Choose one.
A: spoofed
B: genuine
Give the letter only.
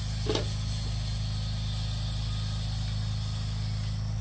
B